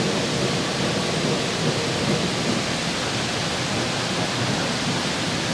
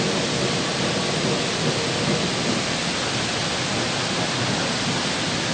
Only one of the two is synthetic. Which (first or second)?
first